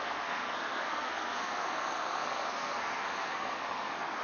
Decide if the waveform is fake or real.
fake